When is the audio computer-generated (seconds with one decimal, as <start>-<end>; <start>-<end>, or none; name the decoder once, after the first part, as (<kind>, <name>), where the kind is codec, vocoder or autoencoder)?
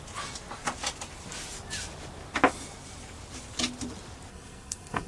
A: 4.3-5.1 (codec, SNAC)